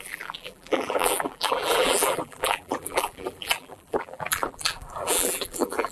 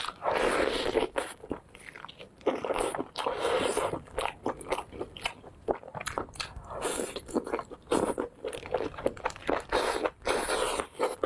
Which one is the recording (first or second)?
second